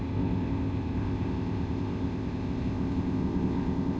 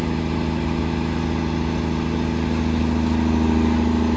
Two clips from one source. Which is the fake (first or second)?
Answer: first